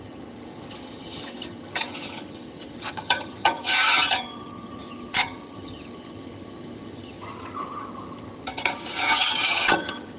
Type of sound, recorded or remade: remade